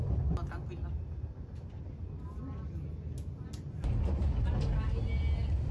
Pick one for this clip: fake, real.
real